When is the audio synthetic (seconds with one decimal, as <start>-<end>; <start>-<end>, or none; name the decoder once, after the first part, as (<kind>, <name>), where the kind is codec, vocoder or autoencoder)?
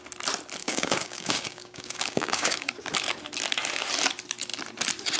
0.6-2.7 (codec, DAC)